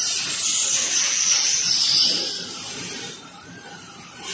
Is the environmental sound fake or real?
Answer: fake